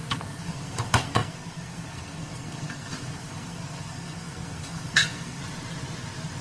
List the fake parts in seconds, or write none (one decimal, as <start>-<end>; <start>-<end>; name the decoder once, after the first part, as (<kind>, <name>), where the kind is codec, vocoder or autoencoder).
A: 0.0-5.4 (codec, SNAC)